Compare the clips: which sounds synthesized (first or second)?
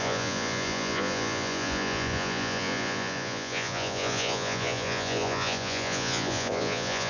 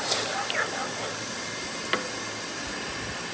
first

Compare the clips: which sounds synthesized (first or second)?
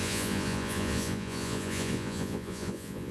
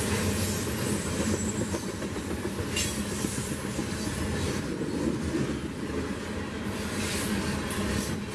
first